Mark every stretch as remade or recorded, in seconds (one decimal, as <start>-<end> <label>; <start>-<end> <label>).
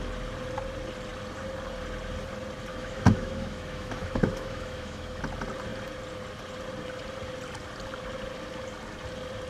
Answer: 0.0-2.7 recorded; 2.7-5.2 remade; 5.2-9.5 recorded